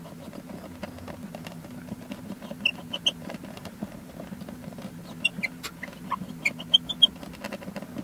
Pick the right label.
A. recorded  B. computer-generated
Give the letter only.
A